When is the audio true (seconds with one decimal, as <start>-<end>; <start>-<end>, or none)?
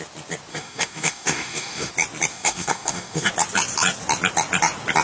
0.0-0.5; 1.9-2.3; 3.3-5.0